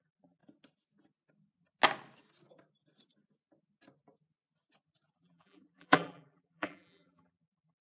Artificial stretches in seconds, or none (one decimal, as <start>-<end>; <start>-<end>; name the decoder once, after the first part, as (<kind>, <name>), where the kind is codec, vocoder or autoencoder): 0.0-0.4 (vocoder, BigVGAN v2); 5.1-7.8